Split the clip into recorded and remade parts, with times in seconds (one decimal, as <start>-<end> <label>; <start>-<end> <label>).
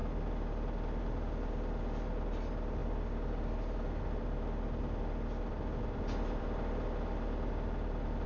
0.0-8.3 recorded